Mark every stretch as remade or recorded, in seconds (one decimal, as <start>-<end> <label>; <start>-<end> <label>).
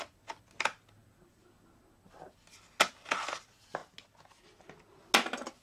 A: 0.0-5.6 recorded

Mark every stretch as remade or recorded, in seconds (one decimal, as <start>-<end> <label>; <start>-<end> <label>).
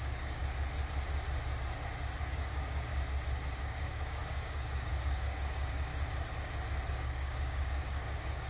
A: 0.0-0.4 remade; 0.4-2.2 recorded; 2.2-2.9 remade; 2.9-3.5 recorded; 3.5-5.9 remade; 5.9-6.9 recorded; 6.9-8.5 remade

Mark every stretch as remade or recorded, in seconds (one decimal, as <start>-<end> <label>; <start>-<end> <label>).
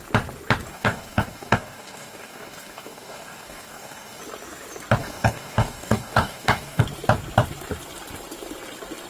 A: 0.0-0.7 recorded; 0.7-4.2 remade; 4.2-5.0 recorded; 5.0-6.8 remade; 6.8-9.1 recorded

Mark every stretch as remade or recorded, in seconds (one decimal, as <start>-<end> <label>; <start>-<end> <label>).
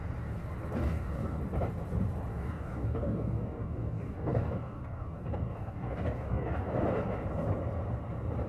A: 0.0-0.8 recorded; 0.8-1.4 remade; 1.4-2.3 recorded; 2.3-6.7 remade; 6.7-8.5 recorded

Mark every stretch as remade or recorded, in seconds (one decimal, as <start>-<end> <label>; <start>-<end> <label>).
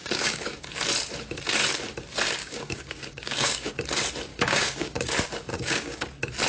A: 0.0-0.6 remade; 0.6-2.4 recorded; 2.4-3.7 remade; 3.7-4.3 recorded; 4.3-5.1 remade; 5.1-5.5 recorded; 5.5-6.0 remade; 6.0-6.5 recorded